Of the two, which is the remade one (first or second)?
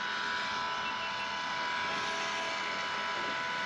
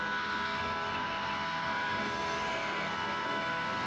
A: second